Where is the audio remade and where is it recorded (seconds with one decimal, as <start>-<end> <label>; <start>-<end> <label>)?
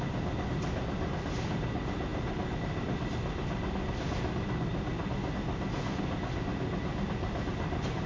0.0-8.1 recorded